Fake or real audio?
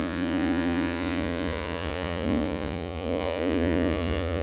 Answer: fake